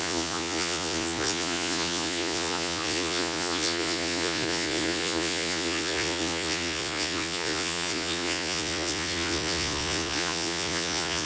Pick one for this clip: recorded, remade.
remade